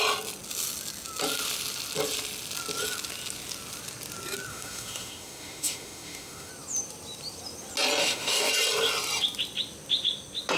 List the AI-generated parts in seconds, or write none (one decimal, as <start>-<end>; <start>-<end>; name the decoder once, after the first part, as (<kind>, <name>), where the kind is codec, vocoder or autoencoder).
4.5-6.5 (autoencoder, DAC-VAE); 8.0-8.5

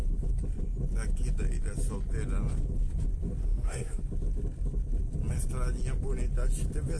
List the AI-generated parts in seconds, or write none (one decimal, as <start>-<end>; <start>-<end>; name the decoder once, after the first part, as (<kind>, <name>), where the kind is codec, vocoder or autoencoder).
3.4-4.0 (codec, SNAC)

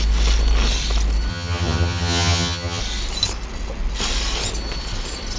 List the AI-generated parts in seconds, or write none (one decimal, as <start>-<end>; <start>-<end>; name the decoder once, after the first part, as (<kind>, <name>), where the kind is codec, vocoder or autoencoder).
1.3-2.8 (vocoder, HiFi-GAN)